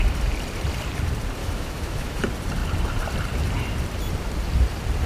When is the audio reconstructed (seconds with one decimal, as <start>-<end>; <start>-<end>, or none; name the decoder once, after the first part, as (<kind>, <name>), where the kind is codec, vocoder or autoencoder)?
1.4-2.2 (autoencoder, DAC-VAE)